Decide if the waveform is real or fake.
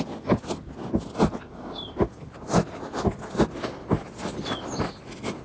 real